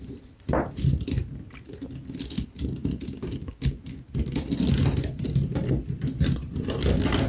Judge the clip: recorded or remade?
recorded